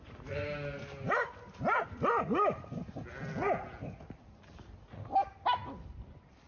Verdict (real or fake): real